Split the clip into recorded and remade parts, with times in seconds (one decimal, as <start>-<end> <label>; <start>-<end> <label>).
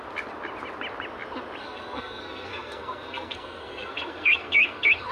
0.0-1.6 recorded; 1.6-5.1 remade